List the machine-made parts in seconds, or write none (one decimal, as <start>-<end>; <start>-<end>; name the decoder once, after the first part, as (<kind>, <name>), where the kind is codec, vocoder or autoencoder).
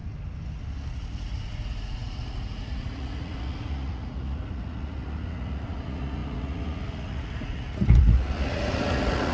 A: 0.9-9.3 (vocoder, Vocos)